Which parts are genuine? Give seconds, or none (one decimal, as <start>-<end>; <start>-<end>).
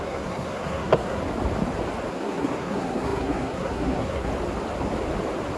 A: 1.2-2.1; 4.3-5.6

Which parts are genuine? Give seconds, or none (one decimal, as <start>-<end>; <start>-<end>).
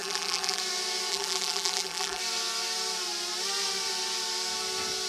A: 0.6-1.1; 2.2-5.1